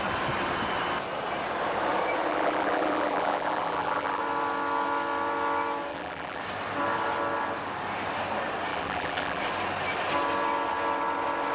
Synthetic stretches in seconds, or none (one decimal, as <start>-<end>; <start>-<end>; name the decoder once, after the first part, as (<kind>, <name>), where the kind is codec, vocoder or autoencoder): 2.3-4.2 (vocoder, BigVGAN v2); 5.9-6.4; 8.7-9.4